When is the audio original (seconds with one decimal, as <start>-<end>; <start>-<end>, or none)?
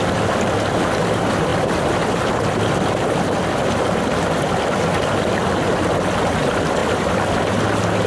0.0-6.8; 7.3-8.1